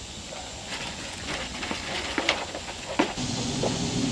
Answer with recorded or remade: remade